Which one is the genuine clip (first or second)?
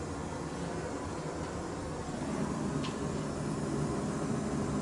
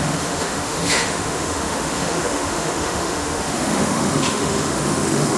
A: first